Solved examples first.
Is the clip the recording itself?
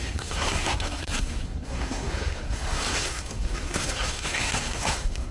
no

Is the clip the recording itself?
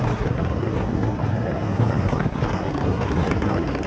no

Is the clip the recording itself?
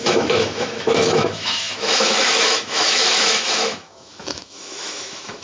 no